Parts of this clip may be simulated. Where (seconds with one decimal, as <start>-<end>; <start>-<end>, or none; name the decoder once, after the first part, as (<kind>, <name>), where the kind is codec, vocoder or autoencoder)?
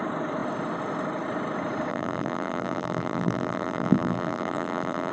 1.9-5.1 (vocoder, BigVGAN v2)